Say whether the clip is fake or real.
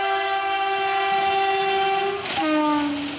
real